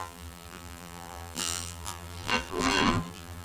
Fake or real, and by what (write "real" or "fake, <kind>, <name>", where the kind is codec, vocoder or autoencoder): fake, vocoder, BigVGAN v2